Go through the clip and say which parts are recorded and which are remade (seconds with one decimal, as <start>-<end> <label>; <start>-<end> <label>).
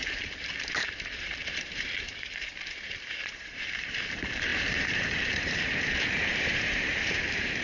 0.0-7.6 remade